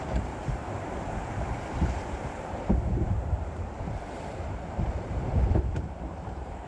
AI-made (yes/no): yes